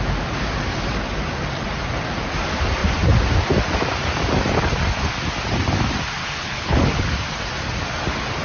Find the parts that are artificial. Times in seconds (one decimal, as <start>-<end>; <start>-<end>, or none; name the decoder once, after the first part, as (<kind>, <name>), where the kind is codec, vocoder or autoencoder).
6.2-7.1 (codec, HILCodec)